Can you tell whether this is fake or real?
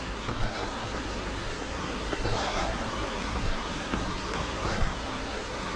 fake